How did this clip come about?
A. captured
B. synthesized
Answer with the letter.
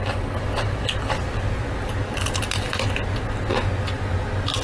A